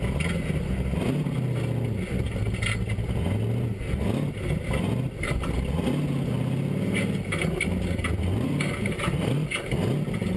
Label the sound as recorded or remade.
recorded